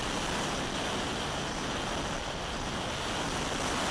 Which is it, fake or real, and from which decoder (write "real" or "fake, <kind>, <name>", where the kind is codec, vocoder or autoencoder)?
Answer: real